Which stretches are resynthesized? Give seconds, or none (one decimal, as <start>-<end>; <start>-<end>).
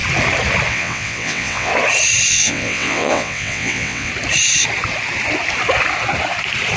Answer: 0.7-1.7; 2.3-4.1